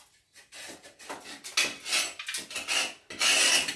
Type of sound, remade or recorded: recorded